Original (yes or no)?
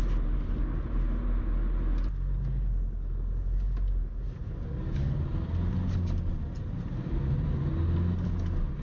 yes